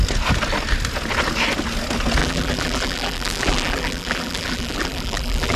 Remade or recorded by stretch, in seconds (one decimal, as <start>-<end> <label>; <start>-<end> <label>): 0.0-2.2 recorded; 2.2-5.6 remade